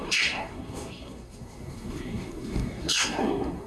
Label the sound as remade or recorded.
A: remade